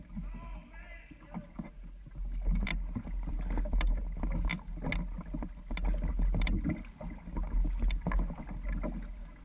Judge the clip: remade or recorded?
recorded